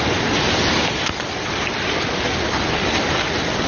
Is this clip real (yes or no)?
yes